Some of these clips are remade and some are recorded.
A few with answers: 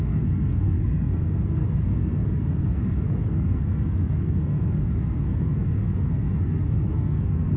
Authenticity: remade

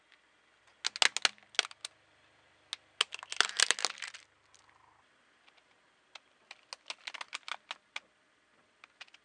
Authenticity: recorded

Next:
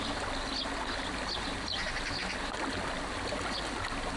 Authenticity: recorded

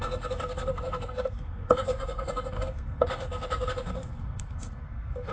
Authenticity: remade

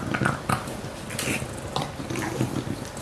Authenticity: recorded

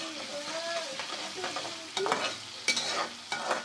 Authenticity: recorded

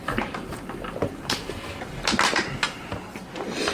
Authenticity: recorded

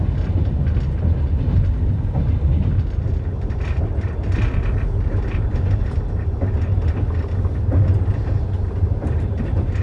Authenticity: recorded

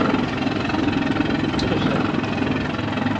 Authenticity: recorded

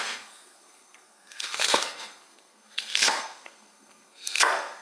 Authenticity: remade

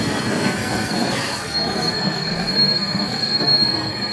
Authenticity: remade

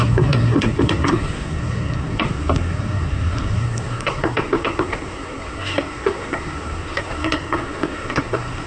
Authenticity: remade